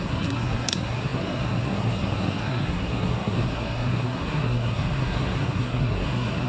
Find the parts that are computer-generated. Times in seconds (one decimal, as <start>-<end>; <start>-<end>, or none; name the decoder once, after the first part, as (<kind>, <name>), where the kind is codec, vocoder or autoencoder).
0.0-6.5 (codec, SNAC)